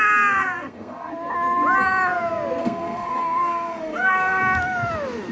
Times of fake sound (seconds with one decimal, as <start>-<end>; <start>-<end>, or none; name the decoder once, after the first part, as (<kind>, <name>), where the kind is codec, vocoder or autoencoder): 0.4-1.1 (codec, SNAC); 2.6-4.4